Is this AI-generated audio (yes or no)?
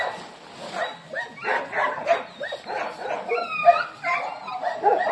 no